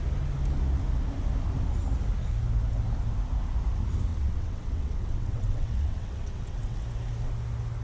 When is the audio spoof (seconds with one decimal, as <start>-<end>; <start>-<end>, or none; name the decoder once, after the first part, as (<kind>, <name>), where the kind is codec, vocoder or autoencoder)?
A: 4.1-6.8 (vocoder, WaveNeXt)